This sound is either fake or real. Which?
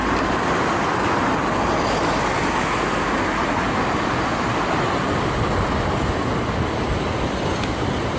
real